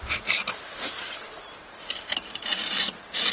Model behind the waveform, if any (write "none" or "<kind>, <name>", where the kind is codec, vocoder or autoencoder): vocoder, BigVGAN v2